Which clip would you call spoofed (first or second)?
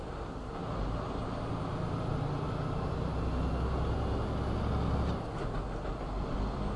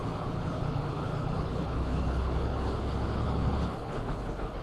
second